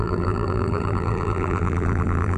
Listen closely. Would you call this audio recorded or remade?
remade